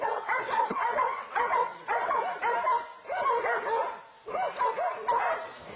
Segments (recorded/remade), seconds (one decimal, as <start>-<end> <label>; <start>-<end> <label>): 0.0-2.2 remade; 2.2-5.8 recorded